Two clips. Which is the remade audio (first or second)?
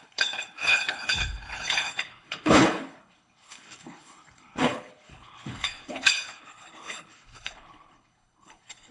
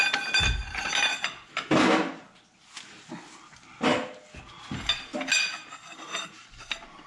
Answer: first